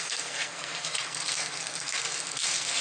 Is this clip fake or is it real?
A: fake